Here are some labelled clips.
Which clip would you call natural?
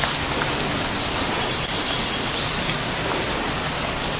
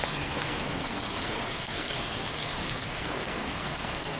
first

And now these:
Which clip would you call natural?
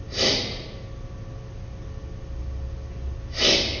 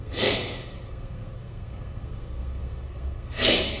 first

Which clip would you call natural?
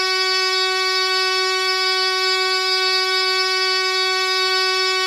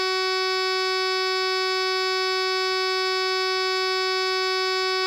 second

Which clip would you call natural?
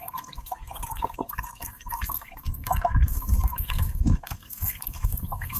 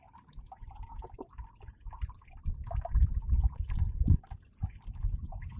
second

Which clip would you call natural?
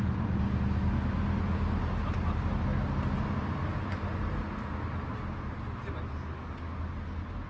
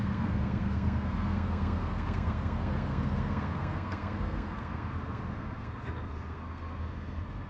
first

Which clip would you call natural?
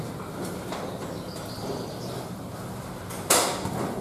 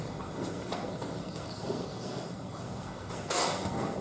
first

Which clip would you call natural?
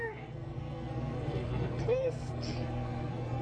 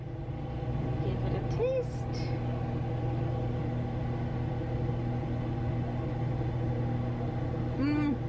second